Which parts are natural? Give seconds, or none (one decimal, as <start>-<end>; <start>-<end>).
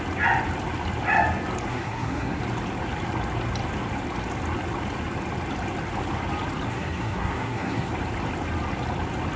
0.0-1.7; 2.4-6.7; 7.9-9.4